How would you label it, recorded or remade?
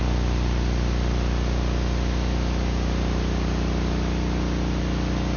recorded